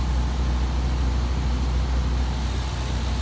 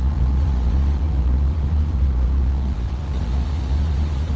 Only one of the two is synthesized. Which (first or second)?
second